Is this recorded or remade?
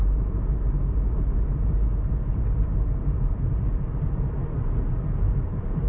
remade